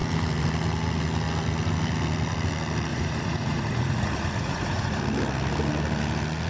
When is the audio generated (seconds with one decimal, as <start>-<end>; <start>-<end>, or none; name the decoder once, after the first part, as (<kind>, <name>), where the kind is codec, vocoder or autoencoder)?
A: 2.9-5.0 (vocoder, Vocos)